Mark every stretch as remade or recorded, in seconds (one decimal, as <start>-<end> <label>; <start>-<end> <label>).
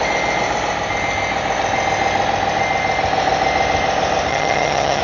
0.0-4.3 recorded; 4.3-5.0 remade